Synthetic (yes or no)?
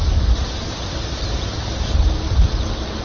no